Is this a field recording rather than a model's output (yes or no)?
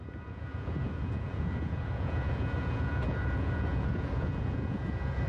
no